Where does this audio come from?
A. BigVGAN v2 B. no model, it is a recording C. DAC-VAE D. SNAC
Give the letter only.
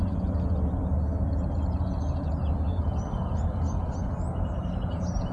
B